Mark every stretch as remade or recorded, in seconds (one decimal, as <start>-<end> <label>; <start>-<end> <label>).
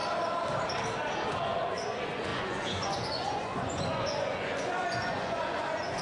0.0-1.3 recorded; 1.3-6.0 remade